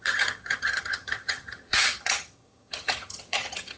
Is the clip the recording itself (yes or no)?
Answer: no